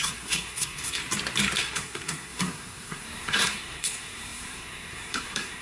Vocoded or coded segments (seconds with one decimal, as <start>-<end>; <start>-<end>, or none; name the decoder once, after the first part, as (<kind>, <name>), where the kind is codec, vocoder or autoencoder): 0.0-1.0 (codec, SNAC); 1.6-5.6